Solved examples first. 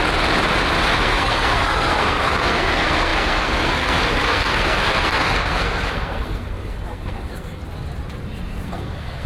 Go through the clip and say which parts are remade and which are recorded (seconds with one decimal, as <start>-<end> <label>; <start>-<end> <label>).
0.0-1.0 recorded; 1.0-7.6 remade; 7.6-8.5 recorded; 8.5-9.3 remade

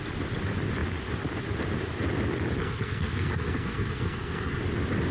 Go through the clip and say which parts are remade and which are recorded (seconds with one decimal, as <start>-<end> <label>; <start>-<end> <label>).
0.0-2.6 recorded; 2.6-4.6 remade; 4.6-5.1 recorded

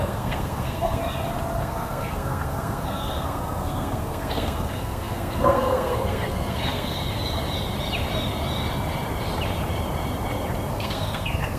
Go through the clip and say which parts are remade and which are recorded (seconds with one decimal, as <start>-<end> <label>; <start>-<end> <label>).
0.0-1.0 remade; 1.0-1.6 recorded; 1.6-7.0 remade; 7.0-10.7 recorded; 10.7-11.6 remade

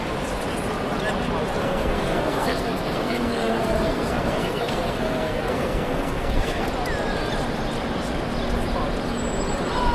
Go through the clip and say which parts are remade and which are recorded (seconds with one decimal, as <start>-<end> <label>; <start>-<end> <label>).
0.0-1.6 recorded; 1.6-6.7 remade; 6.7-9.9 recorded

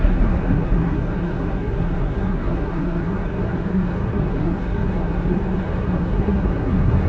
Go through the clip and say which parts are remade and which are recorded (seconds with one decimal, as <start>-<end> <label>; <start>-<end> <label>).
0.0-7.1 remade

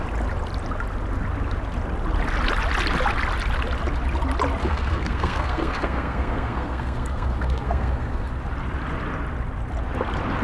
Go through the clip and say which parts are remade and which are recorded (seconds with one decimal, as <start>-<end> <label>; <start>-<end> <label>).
0.0-4.6 recorded; 4.6-8.3 remade; 8.3-10.4 recorded